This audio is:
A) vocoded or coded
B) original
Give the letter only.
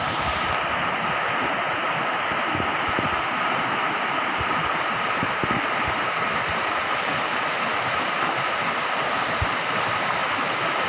B